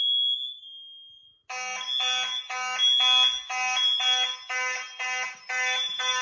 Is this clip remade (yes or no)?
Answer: no